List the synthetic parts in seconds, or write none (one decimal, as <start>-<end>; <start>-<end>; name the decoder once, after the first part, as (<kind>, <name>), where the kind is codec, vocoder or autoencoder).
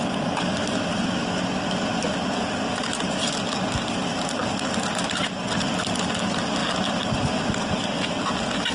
none